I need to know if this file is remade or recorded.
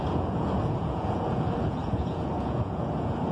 remade